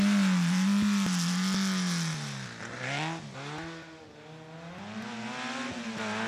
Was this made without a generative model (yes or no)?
yes